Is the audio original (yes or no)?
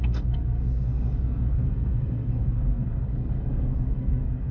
no